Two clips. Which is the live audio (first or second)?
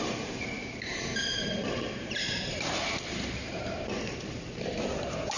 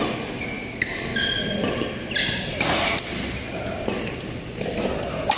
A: second